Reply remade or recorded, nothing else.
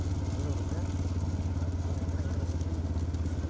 recorded